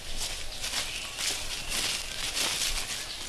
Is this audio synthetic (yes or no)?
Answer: no